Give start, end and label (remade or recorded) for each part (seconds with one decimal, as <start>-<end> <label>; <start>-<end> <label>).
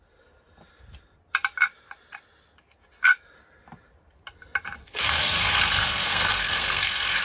0.0-4.8 recorded; 4.8-7.2 remade